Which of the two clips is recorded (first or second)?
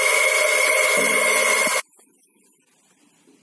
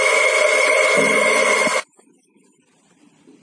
first